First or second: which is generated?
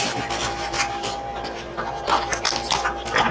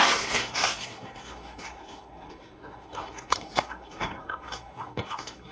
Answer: second